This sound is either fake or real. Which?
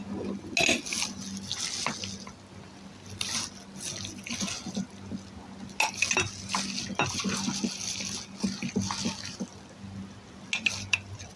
real